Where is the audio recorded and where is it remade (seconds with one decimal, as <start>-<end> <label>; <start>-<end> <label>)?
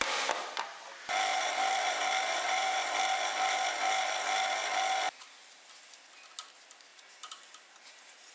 0.0-1.3 recorded; 1.3-3.0 remade; 3.0-6.9 recorded; 6.9-8.3 remade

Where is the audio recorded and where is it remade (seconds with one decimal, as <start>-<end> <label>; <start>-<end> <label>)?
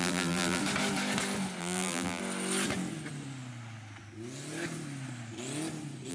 0.0-0.6 remade; 0.6-1.6 recorded; 1.6-2.2 remade; 2.2-6.1 recorded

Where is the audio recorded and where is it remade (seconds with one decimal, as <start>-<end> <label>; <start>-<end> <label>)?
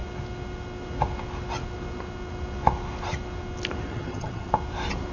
0.0-3.9 recorded; 3.9-4.5 remade; 4.5-5.1 recorded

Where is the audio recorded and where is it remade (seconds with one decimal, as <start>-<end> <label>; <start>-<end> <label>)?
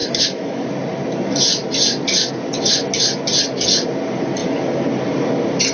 0.0-0.7 remade; 0.7-5.7 recorded